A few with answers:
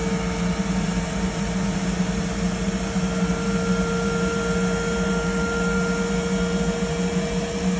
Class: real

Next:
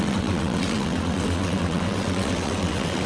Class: fake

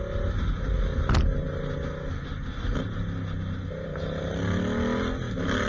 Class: real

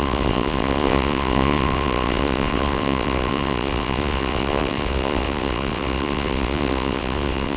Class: fake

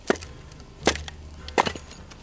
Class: real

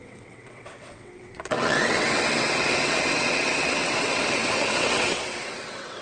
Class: fake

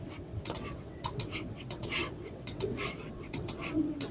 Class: fake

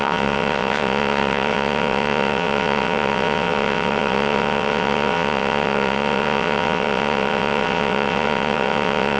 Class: fake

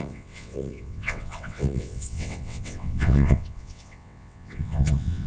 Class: fake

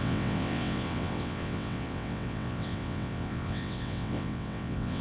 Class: fake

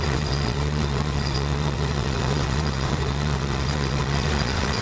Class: fake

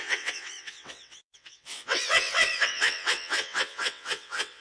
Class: fake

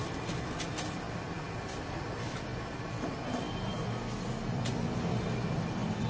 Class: real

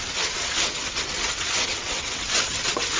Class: fake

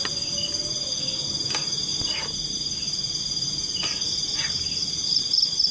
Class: real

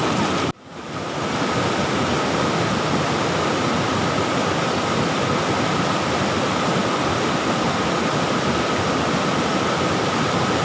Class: real